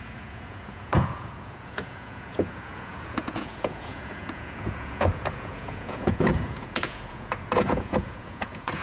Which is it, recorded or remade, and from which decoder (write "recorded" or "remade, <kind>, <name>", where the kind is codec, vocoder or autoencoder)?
remade, vocoder, Vocos